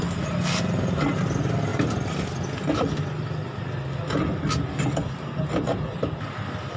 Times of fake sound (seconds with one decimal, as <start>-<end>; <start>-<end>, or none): none

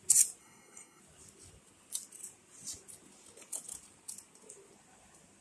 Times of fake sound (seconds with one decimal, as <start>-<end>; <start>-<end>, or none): 0.4-1.0

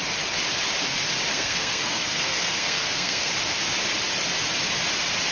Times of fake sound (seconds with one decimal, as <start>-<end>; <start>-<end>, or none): 1.3-3.3

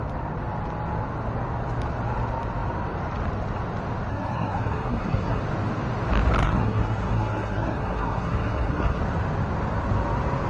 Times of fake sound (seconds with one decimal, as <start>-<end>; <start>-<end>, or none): 4.1-5.4; 6.4-9.0

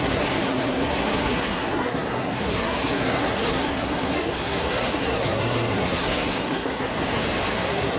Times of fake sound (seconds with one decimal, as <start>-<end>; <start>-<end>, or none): 0.0-6.9; 7.5-8.0

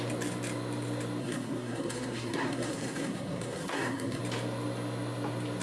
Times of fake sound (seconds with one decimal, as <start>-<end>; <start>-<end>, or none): 1.2-4.2